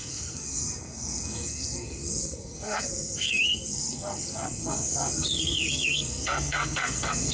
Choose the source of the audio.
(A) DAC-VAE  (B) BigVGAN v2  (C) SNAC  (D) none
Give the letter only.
C